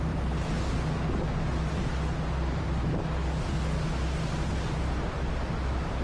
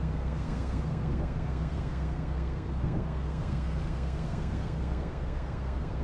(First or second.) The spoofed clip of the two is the second